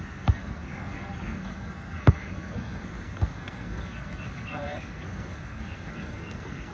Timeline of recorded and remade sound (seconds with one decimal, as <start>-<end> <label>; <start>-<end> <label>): 0.0-6.7 remade